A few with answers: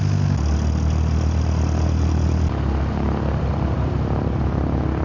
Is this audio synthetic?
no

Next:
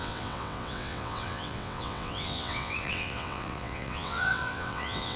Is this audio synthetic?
yes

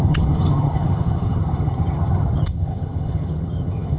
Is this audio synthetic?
yes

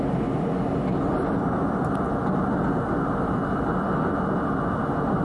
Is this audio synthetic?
no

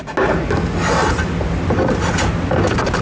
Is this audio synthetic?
no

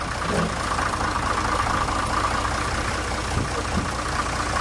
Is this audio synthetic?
no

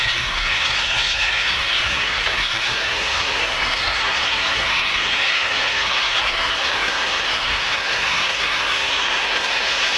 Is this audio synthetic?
yes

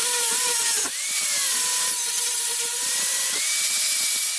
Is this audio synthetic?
yes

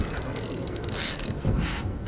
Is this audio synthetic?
yes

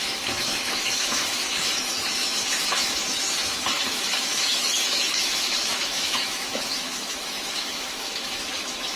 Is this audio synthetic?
yes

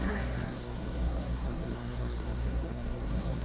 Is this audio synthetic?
yes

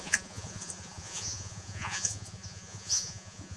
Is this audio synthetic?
yes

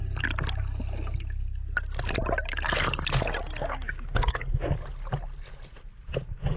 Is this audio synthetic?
no